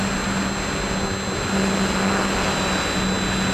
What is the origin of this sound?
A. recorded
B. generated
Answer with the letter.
A